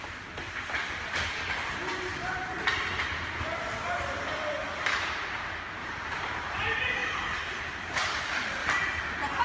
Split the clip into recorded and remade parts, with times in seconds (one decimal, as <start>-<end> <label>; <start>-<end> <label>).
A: 0.0-0.8 remade; 0.8-5.3 recorded; 5.3-8.6 remade; 8.6-9.4 recorded